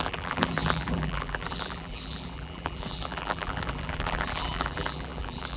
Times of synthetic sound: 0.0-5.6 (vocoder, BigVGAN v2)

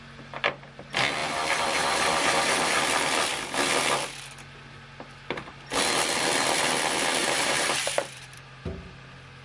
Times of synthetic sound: 1.2-2.8 (vocoder, BigVGAN v2); 7.2-8.6

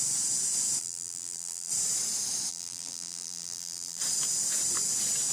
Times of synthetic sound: 0.8-1.7 (vocoder, BigVGAN v2); 2.5-4.0